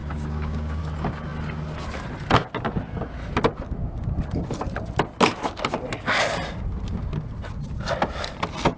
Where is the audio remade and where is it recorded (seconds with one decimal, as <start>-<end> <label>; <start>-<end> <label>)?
0.0-0.8 remade; 0.8-8.8 recorded